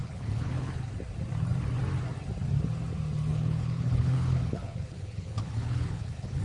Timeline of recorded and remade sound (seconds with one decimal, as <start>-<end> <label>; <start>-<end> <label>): 0.0-0.9 remade; 0.9-3.3 recorded; 3.3-6.4 remade